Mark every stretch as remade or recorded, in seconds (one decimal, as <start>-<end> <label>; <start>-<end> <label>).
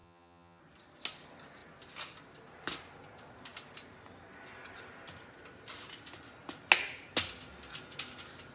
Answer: 0.0-0.6 remade; 0.6-8.5 recorded